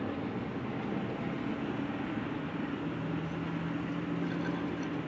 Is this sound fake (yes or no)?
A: no